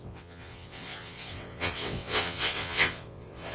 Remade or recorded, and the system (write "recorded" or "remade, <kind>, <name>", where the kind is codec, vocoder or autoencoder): remade, vocoder, WaveNeXt